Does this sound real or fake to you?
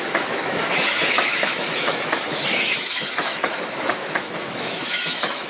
fake